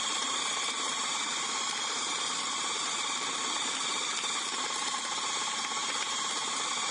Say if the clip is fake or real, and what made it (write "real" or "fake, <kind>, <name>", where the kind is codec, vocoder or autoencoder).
fake, vocoder, BigVGAN v2